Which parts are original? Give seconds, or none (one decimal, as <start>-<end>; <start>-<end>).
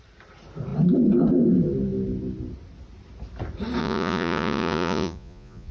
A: 0.0-3.8